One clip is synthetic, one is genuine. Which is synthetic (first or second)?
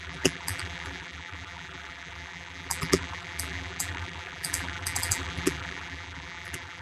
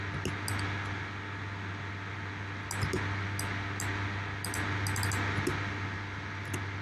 first